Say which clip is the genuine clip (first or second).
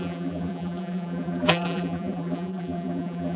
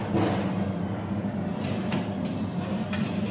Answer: second